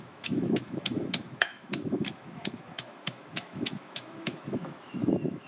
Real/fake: fake